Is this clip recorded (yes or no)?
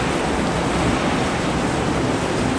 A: yes